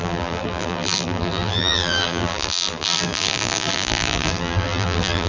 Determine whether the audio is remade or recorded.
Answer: remade